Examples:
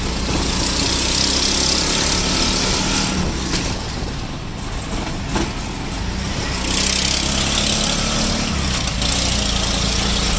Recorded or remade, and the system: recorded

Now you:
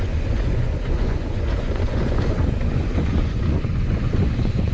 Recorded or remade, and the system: remade, vocoder, Vocos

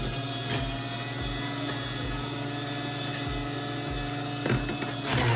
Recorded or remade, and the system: recorded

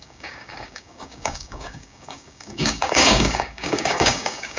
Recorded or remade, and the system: remade, codec, DAC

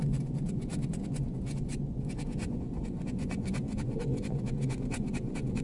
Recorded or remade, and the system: remade, vocoder, Vocos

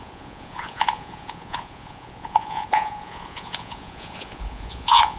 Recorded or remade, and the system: remade, vocoder, Vocos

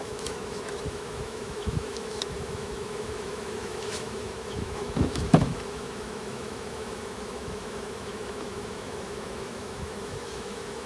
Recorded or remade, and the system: remade, autoencoder, DAC-VAE